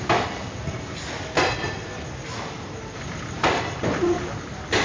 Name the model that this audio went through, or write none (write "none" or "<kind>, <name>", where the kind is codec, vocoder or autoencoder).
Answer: none